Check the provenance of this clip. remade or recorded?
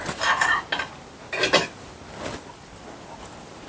recorded